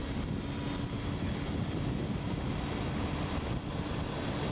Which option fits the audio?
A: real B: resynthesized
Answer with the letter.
A